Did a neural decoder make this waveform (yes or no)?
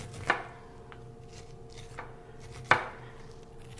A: no